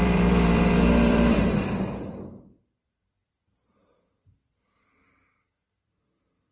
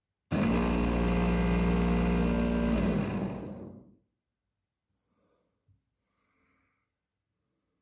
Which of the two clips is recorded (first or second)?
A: second